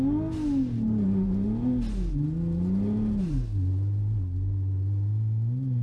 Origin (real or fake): real